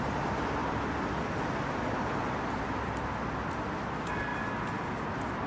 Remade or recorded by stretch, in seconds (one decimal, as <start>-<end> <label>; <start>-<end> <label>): 0.0-0.6 remade; 0.6-3.5 recorded; 3.5-4.3 remade; 4.3-5.5 recorded